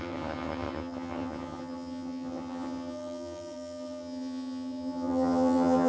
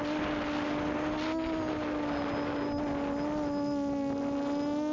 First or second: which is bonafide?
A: second